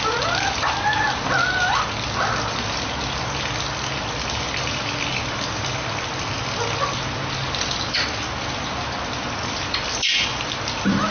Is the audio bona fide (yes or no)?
yes